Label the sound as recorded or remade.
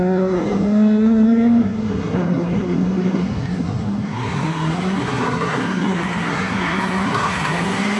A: remade